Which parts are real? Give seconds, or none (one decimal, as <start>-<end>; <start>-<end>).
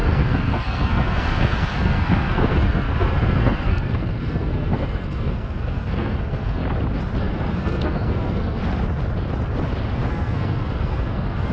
6.6-7.2; 8.6-10.1